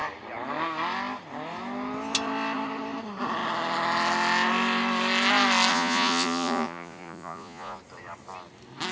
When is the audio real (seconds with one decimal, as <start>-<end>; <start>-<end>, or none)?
0.0-5.7; 7.8-8.9